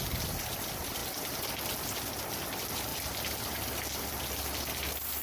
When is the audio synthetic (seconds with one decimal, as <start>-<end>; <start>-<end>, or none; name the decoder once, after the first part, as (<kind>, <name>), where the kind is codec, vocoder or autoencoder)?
none